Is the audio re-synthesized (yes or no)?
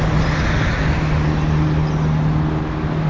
no